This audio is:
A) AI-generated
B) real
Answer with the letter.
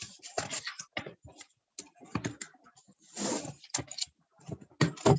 B